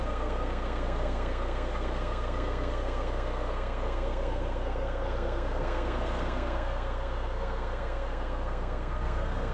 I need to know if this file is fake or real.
fake